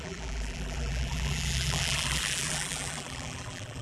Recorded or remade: remade